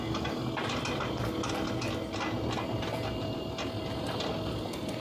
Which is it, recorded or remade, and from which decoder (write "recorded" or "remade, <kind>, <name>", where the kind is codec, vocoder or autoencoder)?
recorded